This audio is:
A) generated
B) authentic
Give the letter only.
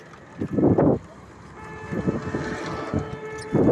B